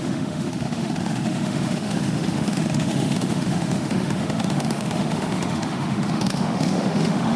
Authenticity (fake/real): fake